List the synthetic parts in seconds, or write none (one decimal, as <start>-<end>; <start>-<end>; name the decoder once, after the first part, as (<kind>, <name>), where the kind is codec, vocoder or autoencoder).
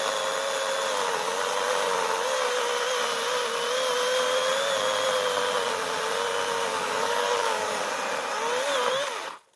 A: 6.7-7.9 (codec, DAC)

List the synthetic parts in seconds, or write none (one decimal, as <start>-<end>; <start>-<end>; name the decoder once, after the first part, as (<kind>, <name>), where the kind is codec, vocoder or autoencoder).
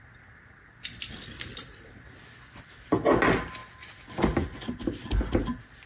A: none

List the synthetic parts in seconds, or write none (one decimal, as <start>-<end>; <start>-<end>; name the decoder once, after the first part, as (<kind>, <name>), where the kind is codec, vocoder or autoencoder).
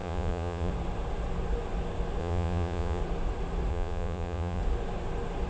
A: 0.0-0.7 (vocoder, Vocos); 2.2-3.0; 3.7-4.6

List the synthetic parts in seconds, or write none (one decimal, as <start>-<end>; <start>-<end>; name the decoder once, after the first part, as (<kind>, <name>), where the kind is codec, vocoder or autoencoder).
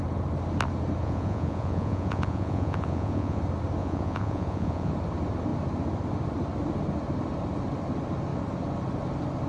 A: 1.0-3.4 (vocoder, Vocos); 3.8-4.9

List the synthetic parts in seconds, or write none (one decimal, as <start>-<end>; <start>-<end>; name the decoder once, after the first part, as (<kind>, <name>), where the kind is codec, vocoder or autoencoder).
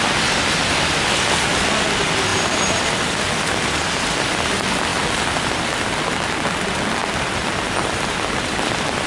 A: none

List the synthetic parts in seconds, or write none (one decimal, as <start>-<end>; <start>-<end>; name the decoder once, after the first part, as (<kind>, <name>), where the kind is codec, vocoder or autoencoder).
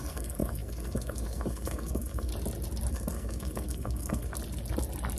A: 0.0-2.3 (codec, SNAC); 2.9-4.3